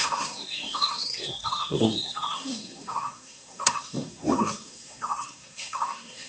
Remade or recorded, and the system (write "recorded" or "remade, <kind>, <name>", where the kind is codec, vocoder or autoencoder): remade, codec, SNAC